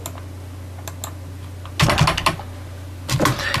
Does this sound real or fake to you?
real